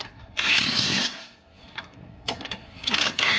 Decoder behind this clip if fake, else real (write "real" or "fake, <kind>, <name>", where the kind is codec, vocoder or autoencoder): fake, codec, SNAC